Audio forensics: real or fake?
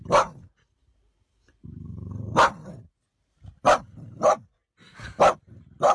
real